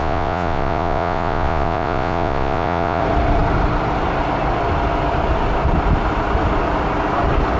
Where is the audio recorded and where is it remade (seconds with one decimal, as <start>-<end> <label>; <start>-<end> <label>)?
0.0-3.0 remade; 3.0-7.6 recorded